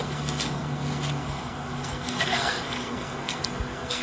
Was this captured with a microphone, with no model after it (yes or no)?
no